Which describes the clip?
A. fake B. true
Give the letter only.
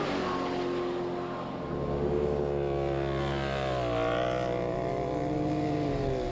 B